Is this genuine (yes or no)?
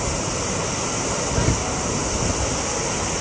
yes